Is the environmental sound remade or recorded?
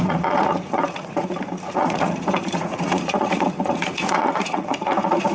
remade